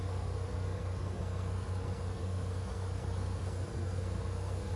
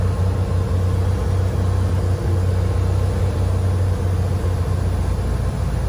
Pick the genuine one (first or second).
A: second